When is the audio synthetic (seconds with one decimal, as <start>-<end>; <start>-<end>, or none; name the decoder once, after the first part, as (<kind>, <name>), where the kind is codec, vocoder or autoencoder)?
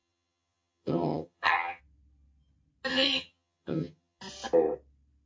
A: 0.0-1.8 (vocoder, HiFi-GAN); 2.9-4.2